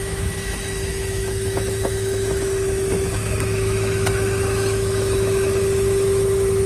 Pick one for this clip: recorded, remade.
remade